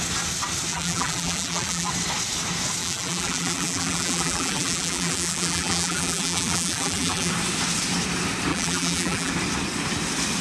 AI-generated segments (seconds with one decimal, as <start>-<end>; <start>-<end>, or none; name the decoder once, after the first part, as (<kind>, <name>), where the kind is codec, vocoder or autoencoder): 0.7-1.9 (vocoder, BigVGAN v2); 2.8-7.3; 8.5-9.3